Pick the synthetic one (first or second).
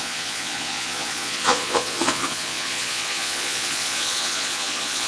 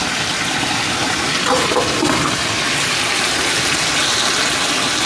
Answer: first